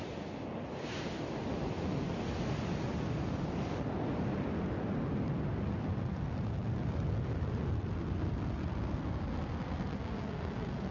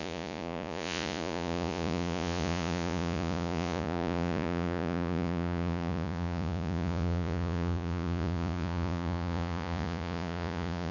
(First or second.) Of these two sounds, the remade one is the second